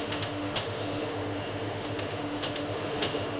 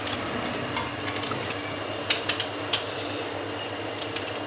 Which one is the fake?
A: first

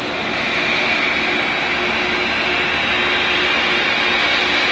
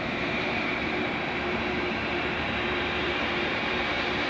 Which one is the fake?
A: second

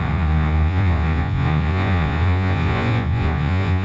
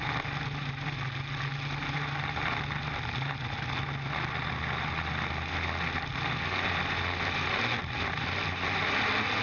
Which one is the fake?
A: first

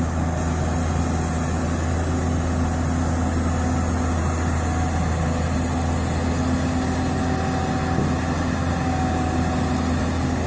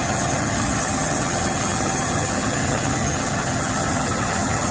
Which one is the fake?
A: second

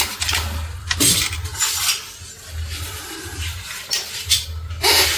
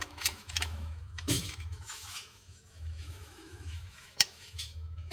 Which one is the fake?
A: second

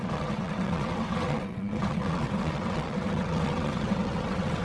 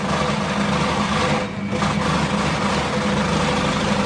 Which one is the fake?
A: first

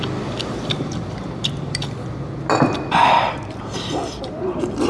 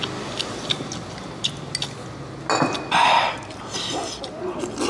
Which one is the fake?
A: first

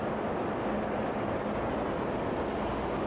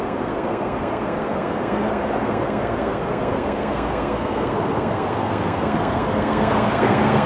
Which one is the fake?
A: second